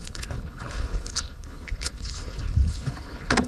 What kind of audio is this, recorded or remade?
remade